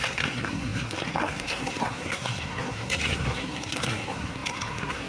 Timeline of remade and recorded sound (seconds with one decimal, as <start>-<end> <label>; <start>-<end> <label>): 0.0-5.1 remade